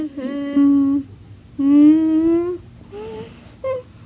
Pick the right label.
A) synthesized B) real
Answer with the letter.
B